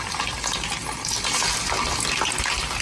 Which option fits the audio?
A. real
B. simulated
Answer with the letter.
A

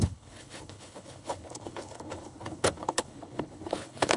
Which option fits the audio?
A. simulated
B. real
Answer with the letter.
A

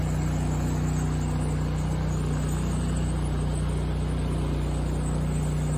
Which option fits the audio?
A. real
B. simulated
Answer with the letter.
A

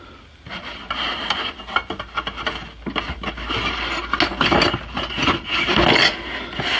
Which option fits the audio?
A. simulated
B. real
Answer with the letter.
B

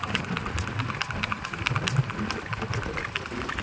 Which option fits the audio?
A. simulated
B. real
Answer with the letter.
B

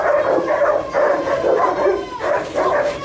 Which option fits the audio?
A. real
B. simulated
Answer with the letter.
B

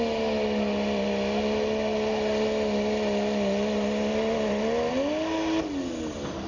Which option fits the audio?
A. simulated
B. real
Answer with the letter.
B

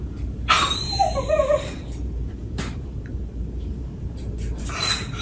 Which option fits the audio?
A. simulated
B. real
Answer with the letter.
A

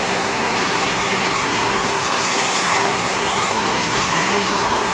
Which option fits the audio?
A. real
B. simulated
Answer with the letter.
B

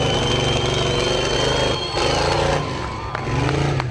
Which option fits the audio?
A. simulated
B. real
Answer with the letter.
B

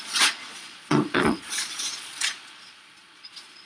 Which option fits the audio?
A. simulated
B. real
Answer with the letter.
A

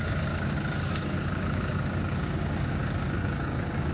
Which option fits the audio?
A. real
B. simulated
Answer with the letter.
B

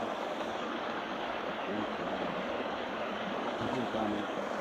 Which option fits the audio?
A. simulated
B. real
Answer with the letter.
A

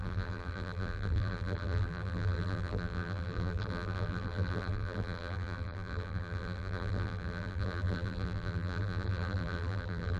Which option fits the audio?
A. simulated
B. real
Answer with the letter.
A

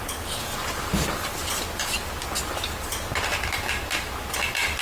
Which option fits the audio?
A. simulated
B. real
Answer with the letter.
B